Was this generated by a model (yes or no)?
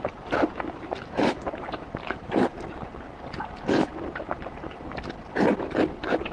yes